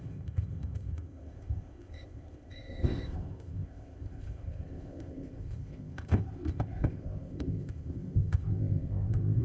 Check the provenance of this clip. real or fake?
fake